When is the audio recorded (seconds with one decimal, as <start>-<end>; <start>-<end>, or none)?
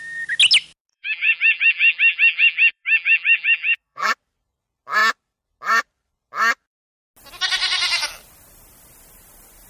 0.0-0.9; 4.1-9.7